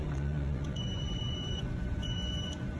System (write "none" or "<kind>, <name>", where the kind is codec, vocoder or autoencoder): vocoder, Vocos